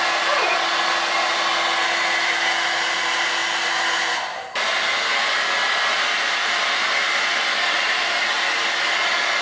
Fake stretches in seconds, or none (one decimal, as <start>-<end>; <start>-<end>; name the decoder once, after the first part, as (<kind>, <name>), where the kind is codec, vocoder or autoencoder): none